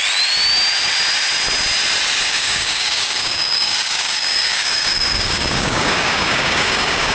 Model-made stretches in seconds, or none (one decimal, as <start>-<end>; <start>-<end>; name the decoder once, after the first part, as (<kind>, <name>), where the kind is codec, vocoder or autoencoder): 2.3-7.1 (codec, DAC)